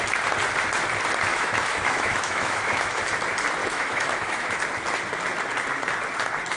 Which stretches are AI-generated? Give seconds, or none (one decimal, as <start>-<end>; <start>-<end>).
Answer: 1.3-3.0; 3.6-4.6